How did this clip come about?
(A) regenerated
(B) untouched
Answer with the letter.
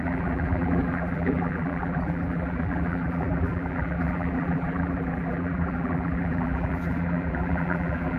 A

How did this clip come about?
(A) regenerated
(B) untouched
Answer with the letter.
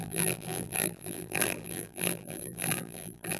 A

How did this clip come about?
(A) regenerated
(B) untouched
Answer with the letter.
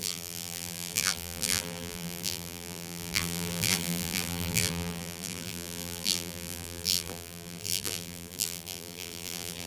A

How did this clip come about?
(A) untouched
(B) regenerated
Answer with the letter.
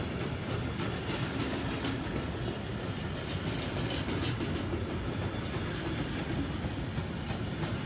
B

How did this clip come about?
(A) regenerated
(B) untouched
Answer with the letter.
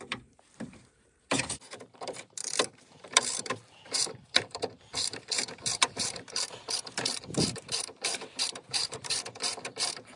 A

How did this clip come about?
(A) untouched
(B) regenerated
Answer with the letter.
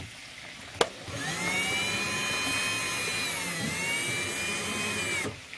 A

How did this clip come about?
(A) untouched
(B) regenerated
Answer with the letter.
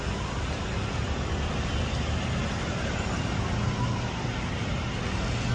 A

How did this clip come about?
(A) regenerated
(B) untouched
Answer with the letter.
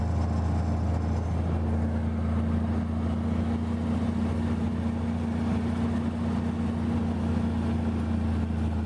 B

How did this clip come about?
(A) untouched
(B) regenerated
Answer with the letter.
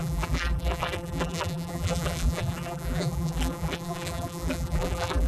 B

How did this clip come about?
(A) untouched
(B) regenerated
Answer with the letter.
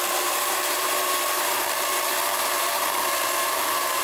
B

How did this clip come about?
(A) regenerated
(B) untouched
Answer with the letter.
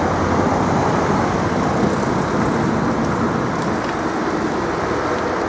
B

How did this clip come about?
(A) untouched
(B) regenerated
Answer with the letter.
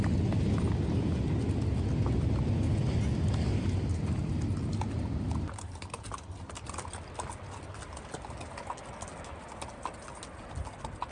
A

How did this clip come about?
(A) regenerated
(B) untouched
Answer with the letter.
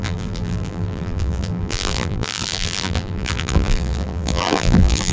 A